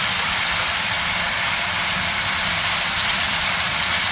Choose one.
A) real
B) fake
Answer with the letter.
B